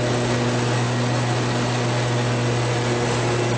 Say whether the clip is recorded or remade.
recorded